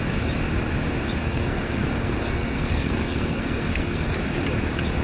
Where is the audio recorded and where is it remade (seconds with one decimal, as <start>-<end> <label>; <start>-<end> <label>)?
0.0-1.2 recorded; 1.2-4.2 remade; 4.2-5.0 recorded

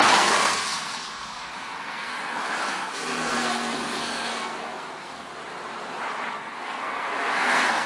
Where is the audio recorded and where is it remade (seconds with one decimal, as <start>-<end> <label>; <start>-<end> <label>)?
0.0-5.3 remade; 5.3-6.3 recorded; 6.3-7.9 remade

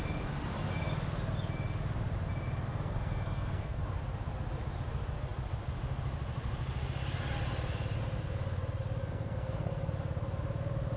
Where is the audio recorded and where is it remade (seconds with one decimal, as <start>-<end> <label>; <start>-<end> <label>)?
0.0-2.7 recorded; 2.7-3.8 remade; 3.8-9.0 recorded; 9.0-9.9 remade; 9.9-11.0 recorded

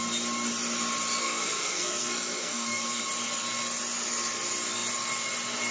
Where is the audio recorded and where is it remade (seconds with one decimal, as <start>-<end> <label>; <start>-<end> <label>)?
0.0-1.2 recorded; 1.2-3.0 remade; 3.0-5.7 recorded

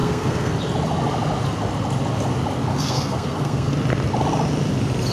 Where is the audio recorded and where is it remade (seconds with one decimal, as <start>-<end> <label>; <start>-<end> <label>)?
0.0-0.5 remade; 0.5-2.7 recorded; 2.7-3.7 remade; 3.7-5.1 recorded